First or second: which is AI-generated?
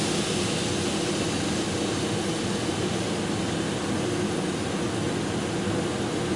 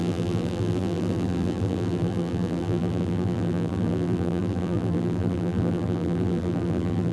second